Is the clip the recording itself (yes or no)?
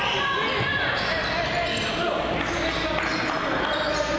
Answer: yes